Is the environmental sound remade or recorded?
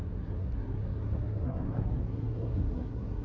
remade